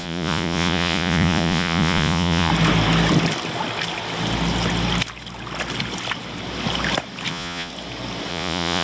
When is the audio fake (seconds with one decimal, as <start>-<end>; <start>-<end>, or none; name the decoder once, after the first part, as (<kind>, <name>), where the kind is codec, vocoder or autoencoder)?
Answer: 0.0-2.5 (vocoder, Vocos); 7.3-7.7; 8.3-8.8